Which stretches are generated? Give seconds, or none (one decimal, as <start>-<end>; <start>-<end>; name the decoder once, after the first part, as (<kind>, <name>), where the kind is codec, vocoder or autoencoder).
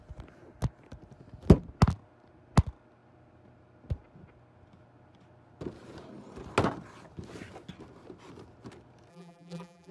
9.1-9.9 (vocoder, BigVGAN v2)